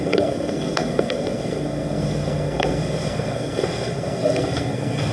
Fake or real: fake